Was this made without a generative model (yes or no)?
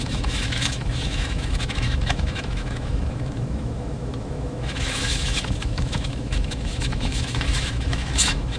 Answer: no